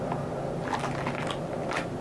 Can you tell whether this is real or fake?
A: real